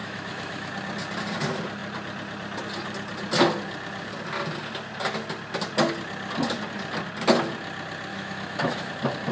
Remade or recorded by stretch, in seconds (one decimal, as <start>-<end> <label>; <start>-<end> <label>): 0.0-0.7 remade; 0.7-8.1 recorded; 8.1-8.9 remade; 8.9-9.3 recorded